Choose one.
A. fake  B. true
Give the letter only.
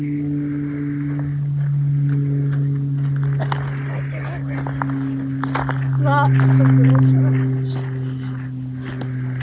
B